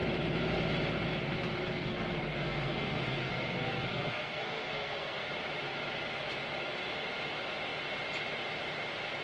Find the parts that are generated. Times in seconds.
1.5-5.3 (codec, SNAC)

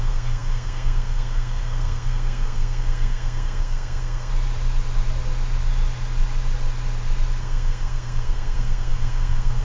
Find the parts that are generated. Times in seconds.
0.0-4.3 (codec, SNAC); 7.4-9.6

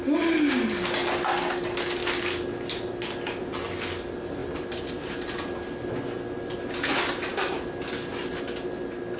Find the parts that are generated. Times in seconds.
none